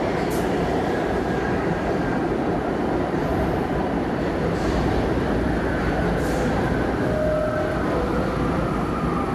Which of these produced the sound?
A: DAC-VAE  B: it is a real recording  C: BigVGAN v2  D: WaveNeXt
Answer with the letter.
B